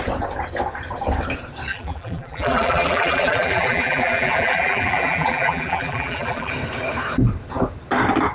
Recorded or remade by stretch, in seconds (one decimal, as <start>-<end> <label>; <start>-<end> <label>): 0.0-1.7 recorded; 1.7-6.5 remade; 6.5-8.3 recorded